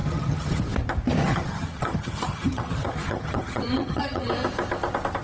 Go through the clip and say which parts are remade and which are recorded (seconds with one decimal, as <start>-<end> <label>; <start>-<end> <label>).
0.0-0.6 remade; 0.6-1.2 recorded; 1.2-4.3 remade; 4.3-5.2 recorded